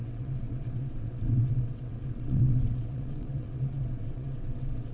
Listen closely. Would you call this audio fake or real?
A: fake